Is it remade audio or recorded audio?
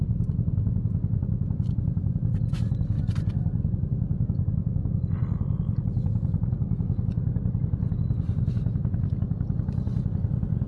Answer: recorded